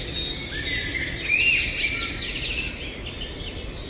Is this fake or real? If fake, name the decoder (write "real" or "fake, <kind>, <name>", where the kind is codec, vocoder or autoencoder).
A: real